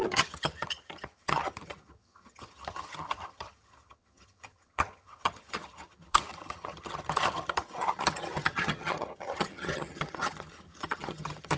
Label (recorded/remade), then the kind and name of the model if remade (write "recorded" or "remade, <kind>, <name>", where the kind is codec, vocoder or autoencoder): remade, vocoder, HiFi-GAN